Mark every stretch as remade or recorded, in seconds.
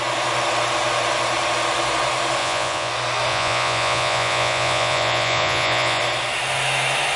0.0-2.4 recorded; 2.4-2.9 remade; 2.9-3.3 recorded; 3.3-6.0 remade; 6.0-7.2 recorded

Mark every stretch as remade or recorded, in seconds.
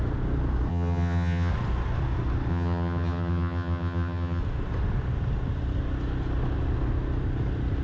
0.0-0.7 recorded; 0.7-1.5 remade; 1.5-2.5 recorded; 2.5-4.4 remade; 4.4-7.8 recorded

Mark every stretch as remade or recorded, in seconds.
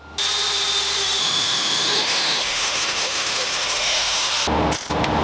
0.0-1.2 recorded; 1.2-4.3 remade; 4.3-5.2 recorded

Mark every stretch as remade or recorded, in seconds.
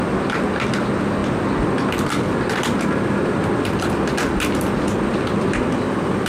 0.0-6.3 recorded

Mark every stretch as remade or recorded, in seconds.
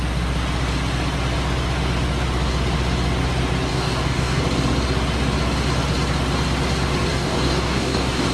0.0-3.7 recorded; 3.7-4.4 remade; 4.4-7.1 recorded; 7.1-8.3 remade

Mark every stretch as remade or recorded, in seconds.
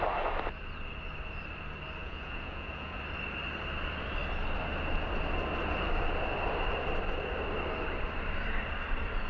0.0-2.0 recorded; 2.0-3.0 remade; 3.0-9.3 recorded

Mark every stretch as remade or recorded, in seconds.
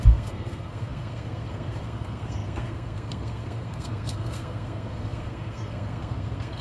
0.0-6.6 remade